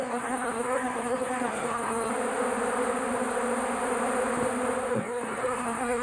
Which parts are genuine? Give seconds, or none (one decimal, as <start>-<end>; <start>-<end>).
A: 2.1-4.9